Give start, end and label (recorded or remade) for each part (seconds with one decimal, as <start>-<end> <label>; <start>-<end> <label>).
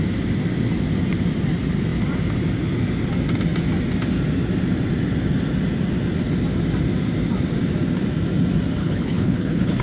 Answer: 0.0-8.8 recorded; 8.8-9.8 remade